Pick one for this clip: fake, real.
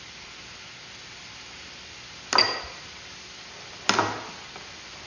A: real